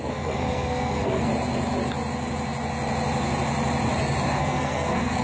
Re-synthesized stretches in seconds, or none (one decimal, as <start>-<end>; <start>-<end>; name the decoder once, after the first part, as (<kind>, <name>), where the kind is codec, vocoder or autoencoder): 0.0-1.3 (codec, SNAC); 4.4-5.2